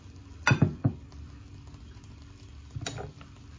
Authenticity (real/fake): real